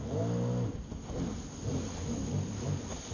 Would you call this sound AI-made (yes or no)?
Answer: no